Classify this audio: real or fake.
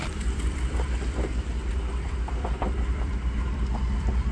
fake